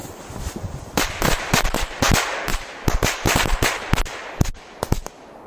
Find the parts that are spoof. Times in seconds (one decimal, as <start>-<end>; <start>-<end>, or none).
none